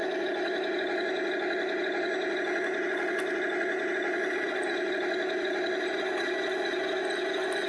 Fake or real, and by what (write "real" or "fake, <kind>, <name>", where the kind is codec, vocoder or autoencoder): real